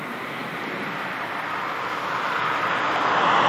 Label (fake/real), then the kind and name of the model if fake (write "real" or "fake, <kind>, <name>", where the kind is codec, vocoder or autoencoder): real